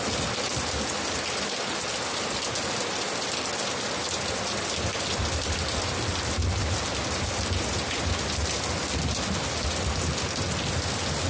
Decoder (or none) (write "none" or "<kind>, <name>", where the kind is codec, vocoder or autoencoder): none